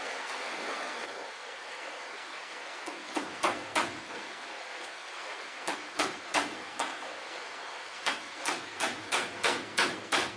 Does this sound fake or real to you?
fake